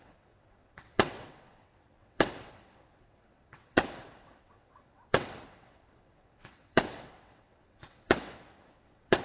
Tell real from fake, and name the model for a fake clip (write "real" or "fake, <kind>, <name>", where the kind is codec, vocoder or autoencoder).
fake, vocoder, WaveNeXt